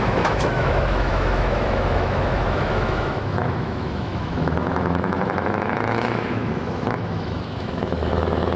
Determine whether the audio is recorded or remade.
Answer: remade